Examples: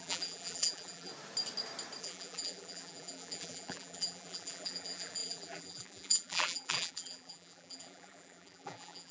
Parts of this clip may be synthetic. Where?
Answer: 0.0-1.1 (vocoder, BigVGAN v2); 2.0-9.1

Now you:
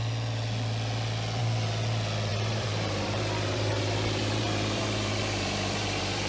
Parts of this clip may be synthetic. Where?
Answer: 2.3-6.3 (vocoder, BigVGAN v2)

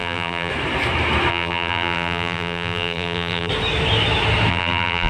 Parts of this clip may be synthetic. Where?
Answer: 0.0-0.5 (vocoder, BigVGAN v2); 1.3-3.5; 4.5-5.1

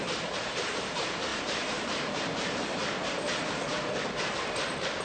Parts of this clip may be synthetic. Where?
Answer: 0.0-5.0 (vocoder, BigVGAN v2)

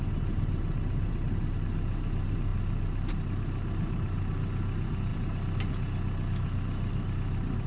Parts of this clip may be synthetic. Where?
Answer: 5.1-5.7 (vocoder, BigVGAN v2)